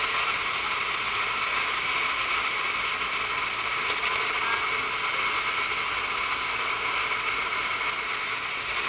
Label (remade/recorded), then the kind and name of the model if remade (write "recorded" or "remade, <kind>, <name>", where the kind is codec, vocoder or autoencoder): recorded